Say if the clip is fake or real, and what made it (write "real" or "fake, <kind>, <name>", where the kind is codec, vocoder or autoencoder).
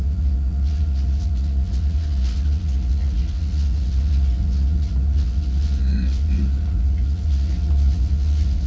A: fake, vocoder, Vocos